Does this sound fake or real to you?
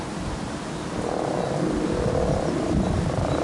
real